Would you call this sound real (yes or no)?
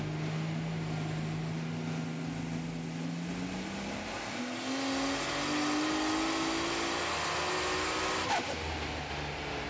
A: yes